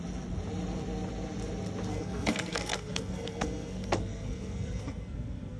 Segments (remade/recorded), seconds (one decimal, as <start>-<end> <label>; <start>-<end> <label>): 0.0-1.9 recorded; 1.9-5.6 remade